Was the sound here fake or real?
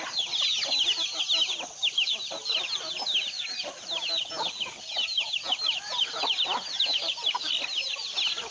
real